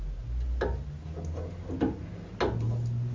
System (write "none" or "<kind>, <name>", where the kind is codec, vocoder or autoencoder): none